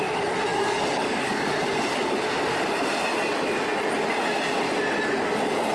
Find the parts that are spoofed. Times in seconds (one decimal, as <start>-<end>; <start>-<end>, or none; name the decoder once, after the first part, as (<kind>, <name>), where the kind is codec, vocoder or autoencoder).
0.5-1.5 (codec, DAC)